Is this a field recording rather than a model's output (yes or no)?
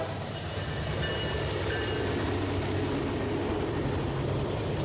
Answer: yes